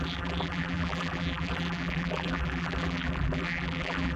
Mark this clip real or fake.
fake